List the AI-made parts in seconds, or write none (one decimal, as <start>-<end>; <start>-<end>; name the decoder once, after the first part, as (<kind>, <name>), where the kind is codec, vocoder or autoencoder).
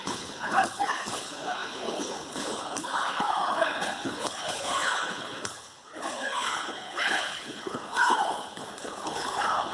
0.0-9.7 (codec, HILCodec)